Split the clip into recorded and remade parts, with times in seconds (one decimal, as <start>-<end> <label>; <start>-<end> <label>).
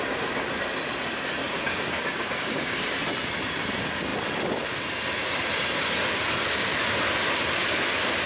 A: 0.0-1.4 recorded; 1.4-2.9 remade; 2.9-8.3 recorded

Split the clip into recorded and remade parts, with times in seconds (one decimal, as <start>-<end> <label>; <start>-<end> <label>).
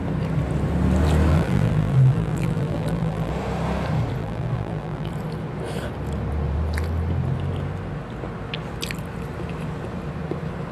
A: 0.0-1.3 recorded; 1.3-3.3 remade; 3.3-4.2 recorded; 4.2-5.1 remade; 5.1-10.7 recorded